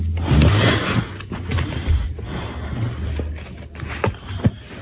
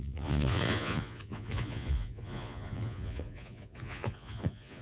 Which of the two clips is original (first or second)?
first